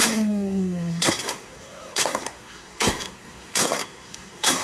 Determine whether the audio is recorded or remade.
remade